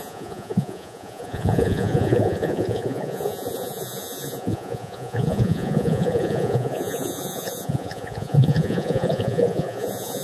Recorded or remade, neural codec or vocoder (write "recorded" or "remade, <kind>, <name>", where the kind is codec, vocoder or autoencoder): remade, vocoder, Vocos